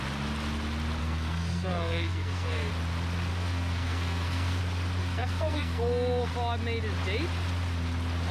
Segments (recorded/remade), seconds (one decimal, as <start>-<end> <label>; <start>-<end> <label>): 0.0-1.0 recorded; 1.0-2.7 remade; 2.7-3.3 recorded; 3.3-4.6 remade; 4.6-5.0 recorded; 5.0-6.3 remade; 6.3-8.3 recorded